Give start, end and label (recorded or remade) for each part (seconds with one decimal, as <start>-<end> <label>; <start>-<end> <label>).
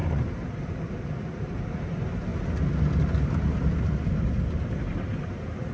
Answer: 0.0-2.3 remade; 2.3-4.7 recorded; 4.7-5.7 remade